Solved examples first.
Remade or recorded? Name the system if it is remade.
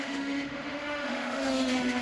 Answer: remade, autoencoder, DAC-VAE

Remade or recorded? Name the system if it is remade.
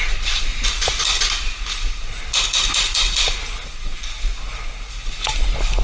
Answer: recorded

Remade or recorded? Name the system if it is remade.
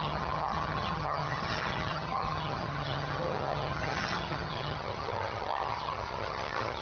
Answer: remade, vocoder, HiFi-GAN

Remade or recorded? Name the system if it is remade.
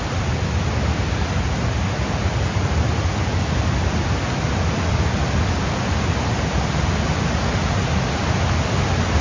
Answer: recorded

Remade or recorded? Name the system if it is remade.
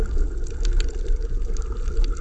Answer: recorded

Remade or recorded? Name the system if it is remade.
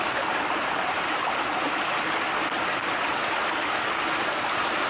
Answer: recorded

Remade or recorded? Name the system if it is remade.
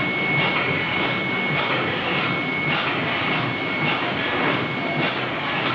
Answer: recorded